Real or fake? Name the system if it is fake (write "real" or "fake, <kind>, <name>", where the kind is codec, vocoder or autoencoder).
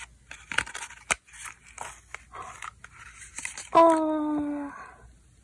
real